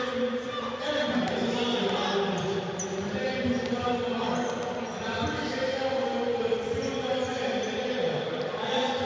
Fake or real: real